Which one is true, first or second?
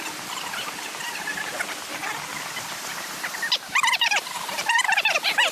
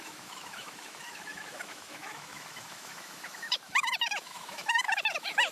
first